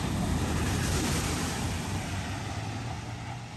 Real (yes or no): yes